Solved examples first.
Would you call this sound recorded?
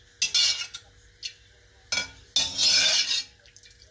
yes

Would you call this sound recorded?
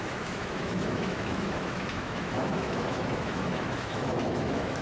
no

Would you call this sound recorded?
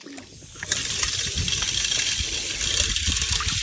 yes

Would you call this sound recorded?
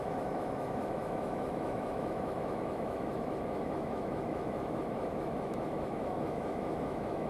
no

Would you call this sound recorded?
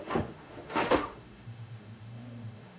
no